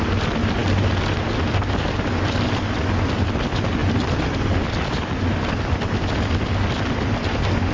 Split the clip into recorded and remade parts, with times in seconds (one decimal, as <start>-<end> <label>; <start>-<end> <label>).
0.0-7.7 recorded